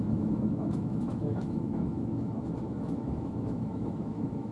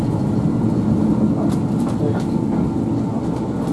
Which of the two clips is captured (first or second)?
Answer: second